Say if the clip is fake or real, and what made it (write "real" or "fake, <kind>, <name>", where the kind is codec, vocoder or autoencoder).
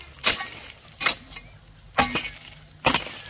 real